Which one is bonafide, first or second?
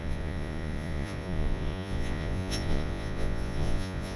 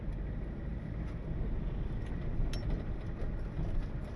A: second